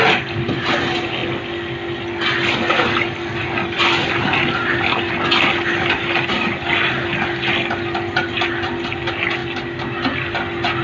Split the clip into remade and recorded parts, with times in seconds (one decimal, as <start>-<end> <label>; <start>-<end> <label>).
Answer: 0.0-10.8 recorded